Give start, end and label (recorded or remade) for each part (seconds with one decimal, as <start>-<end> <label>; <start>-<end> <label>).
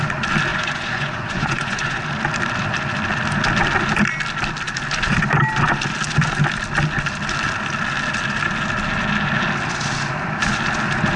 0.0-0.5 recorded; 0.5-2.0 remade; 2.0-11.2 recorded